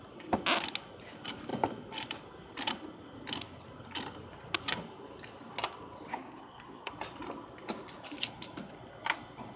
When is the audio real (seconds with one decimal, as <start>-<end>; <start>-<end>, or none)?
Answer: 0.0-6.1; 6.9-9.6